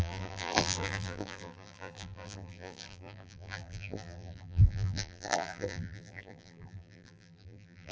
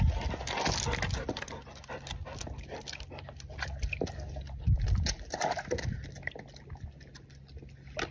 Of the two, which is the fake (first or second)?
first